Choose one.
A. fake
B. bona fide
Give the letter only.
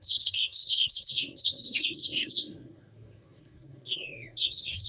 A